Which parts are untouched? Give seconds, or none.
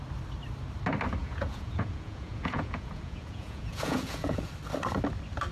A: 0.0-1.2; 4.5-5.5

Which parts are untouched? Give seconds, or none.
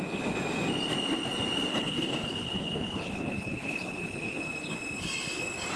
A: 0.0-1.7; 4.4-5.8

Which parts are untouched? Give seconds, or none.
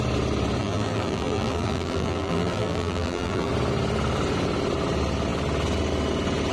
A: 0.0-0.6; 3.5-6.5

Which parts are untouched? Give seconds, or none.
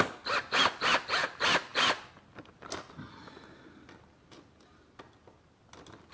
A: 0.0-6.1